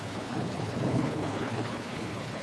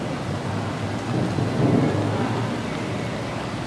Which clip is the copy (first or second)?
first